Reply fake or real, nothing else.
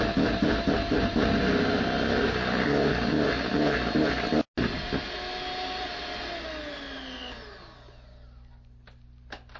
real